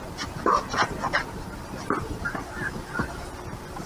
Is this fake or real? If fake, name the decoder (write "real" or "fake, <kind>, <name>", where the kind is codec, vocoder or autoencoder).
real